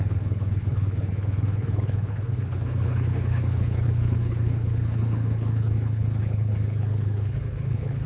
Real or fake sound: fake